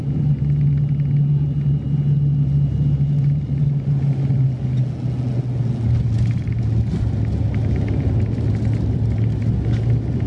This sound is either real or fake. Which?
real